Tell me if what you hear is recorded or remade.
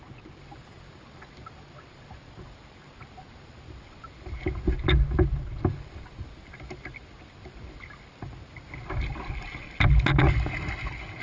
recorded